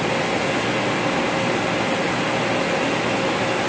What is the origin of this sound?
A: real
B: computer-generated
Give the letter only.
A